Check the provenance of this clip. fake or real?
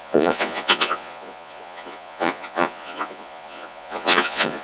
fake